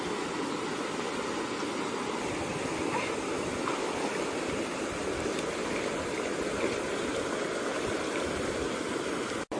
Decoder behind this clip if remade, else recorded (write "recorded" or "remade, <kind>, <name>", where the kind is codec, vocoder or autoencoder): recorded